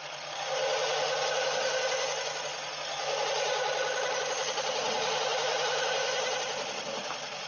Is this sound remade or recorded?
recorded